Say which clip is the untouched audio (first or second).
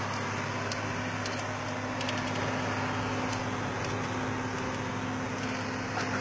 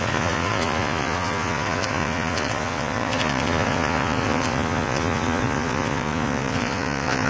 first